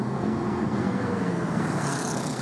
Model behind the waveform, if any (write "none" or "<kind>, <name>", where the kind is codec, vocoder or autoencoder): codec, SNAC